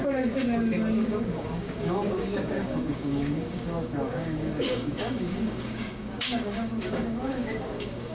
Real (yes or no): no